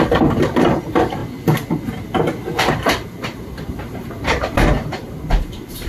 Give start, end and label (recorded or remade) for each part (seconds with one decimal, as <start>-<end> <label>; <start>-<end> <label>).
0.0-1.2 remade; 1.2-2.7 recorded; 2.7-5.9 remade